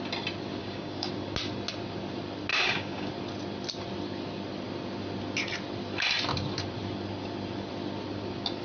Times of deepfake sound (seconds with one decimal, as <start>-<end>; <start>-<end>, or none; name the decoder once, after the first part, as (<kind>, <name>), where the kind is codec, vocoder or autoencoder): 0.6-1.1 (codec, DAC); 2.5-3.1